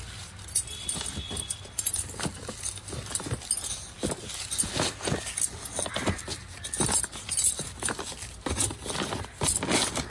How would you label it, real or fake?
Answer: real